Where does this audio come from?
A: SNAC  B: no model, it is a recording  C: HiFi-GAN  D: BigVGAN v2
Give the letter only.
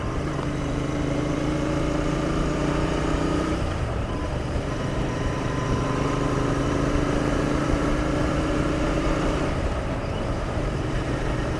D